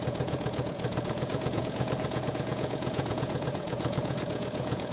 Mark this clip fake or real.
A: fake